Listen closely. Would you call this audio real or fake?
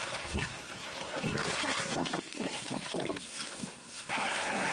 fake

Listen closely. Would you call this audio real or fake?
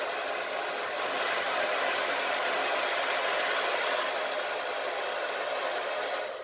real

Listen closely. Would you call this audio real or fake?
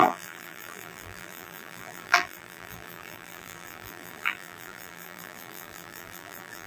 fake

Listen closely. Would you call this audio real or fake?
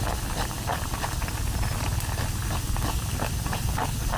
real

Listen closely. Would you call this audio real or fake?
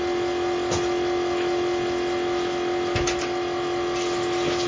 real